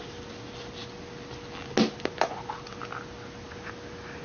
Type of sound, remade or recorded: recorded